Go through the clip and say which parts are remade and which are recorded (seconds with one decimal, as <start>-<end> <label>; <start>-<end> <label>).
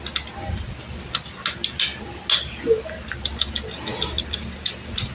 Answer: 0.0-5.1 recorded